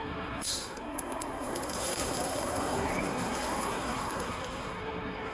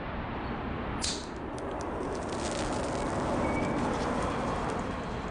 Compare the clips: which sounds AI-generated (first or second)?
first